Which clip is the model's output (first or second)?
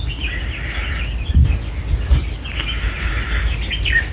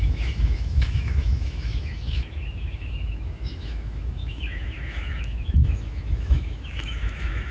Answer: second